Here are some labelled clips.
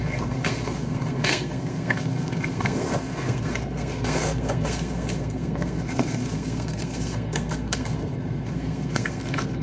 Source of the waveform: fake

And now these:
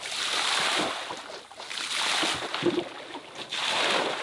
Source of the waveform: real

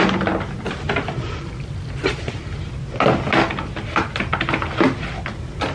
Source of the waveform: real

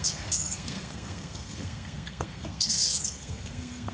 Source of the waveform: fake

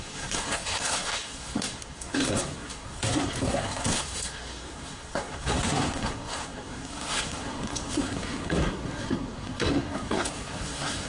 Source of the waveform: fake